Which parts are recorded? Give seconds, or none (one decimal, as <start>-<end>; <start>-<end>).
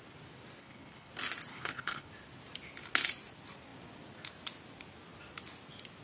0.0-0.6; 1.1-1.5; 2.1-6.0